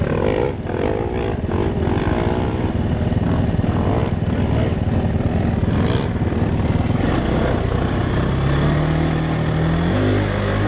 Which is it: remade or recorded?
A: recorded